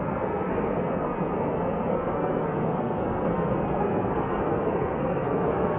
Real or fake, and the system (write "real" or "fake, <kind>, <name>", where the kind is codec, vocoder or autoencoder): fake, codec, SNAC